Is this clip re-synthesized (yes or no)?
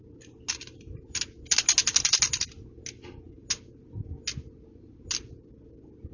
no